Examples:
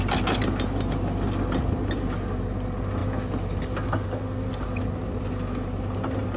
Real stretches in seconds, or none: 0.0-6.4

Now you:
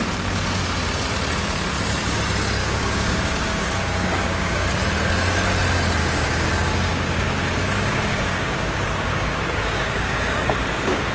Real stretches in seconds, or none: 0.0-2.6; 4.8-6.0

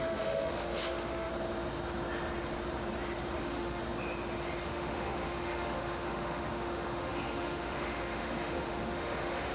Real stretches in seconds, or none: 1.3-3.4; 3.8-4.6

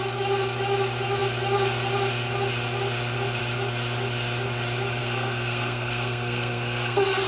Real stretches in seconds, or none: 0.0-5.0